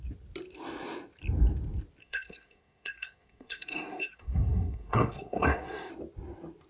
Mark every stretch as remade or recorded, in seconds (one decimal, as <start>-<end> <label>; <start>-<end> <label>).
0.0-2.0 recorded; 2.0-5.9 remade; 5.9-6.7 recorded